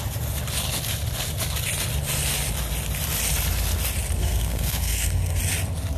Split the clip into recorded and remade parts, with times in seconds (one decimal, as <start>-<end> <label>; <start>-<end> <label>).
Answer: 0.0-4.2 recorded; 4.2-5.4 remade; 5.4-6.0 recorded